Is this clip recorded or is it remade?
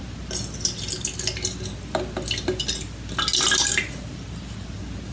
recorded